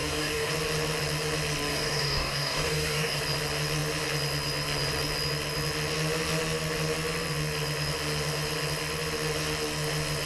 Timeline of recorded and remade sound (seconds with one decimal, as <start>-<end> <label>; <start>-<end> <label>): 0.0-0.5 remade; 0.5-1.7 recorded; 1.7-3.2 remade; 3.2-10.3 recorded